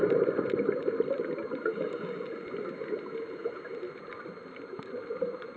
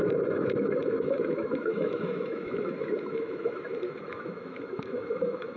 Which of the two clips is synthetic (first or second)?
second